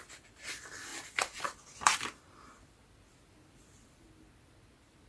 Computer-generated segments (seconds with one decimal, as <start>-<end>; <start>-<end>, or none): 0.9-4.0